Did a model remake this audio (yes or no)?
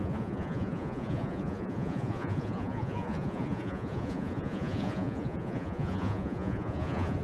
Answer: yes